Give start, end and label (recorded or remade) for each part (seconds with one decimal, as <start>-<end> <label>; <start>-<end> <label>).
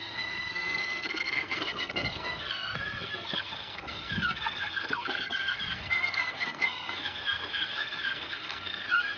0.0-9.2 remade